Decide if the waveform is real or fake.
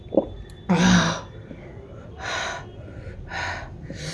real